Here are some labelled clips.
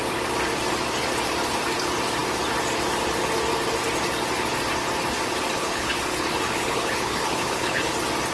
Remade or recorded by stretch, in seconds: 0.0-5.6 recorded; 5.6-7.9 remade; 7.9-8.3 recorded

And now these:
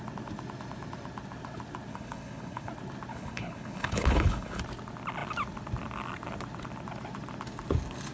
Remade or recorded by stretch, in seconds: 0.0-1.9 recorded; 1.9-2.7 remade; 2.7-3.1 recorded; 3.1-4.6 remade; 4.6-8.1 recorded